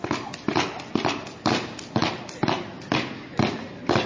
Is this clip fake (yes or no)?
no